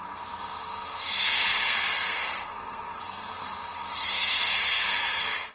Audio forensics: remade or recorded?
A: remade